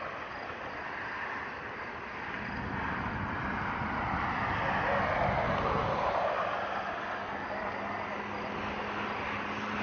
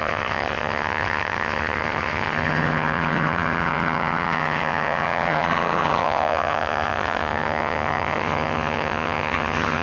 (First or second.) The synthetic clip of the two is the second